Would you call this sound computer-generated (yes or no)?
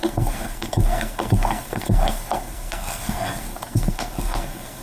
yes